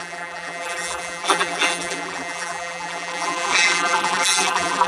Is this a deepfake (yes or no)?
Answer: yes